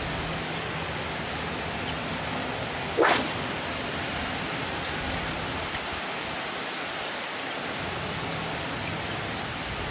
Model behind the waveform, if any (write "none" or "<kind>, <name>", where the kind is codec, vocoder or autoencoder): none